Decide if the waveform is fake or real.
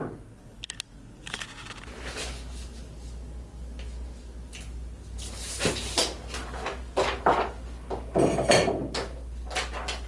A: real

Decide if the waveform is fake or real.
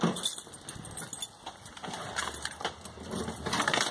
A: real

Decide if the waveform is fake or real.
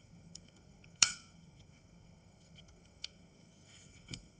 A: fake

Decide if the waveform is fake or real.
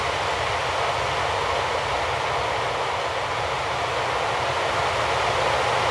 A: real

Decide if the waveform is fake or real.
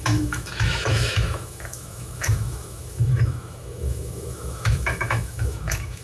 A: fake